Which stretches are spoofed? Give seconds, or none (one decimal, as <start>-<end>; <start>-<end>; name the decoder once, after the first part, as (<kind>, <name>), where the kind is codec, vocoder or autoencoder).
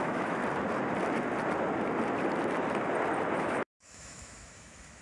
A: 0.0-0.4 (autoencoder, DAC-VAE); 3.4-5.0